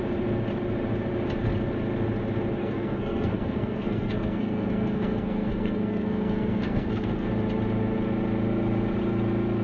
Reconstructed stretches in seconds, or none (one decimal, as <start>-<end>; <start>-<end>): 2.6-7.3